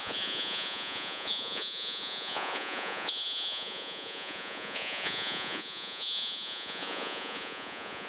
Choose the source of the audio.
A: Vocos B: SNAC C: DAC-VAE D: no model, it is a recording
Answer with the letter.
A